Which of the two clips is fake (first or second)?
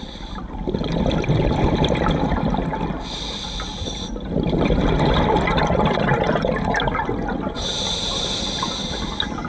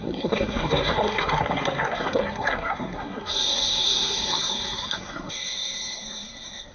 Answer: second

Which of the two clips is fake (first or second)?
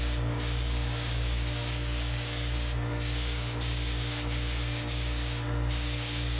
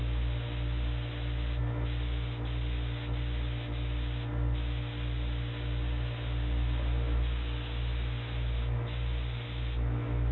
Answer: first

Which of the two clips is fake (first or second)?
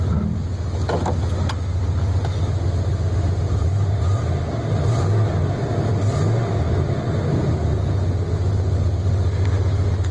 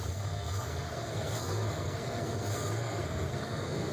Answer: second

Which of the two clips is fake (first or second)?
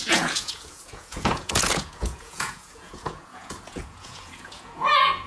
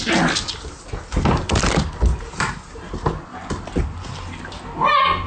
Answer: first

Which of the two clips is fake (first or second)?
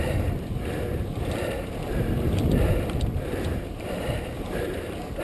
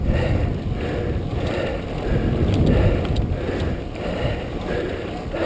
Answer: first